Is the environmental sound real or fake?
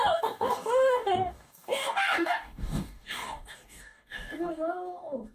fake